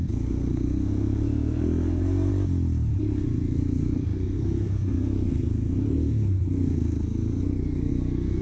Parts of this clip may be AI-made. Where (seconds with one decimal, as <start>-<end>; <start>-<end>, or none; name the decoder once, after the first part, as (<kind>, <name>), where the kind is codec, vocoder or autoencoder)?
0.0-2.3 (codec, SNAC); 3.0-8.4